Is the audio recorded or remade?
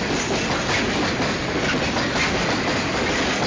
recorded